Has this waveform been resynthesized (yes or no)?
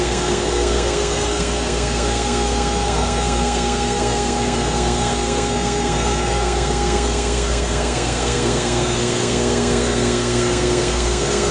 yes